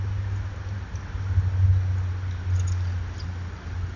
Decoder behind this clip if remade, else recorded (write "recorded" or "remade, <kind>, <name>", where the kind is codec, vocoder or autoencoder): recorded